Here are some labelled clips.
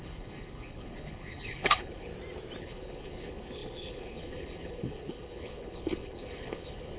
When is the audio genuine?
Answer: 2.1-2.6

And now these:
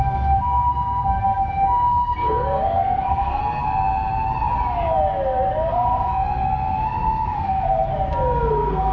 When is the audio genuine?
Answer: 3.4-5.7; 7.9-8.5

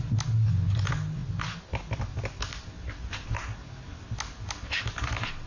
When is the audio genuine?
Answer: 0.0-5.5

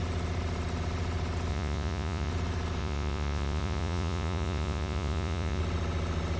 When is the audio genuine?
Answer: 0.0-1.5; 2.3-2.8; 5.6-6.4

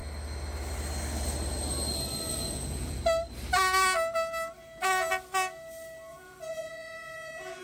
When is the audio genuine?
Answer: 0.0-2.3; 3.0-6.1